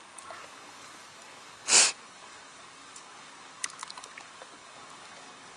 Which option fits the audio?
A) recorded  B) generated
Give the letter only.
B